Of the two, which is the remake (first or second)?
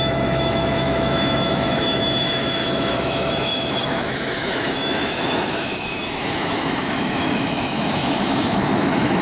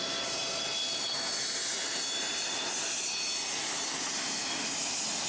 first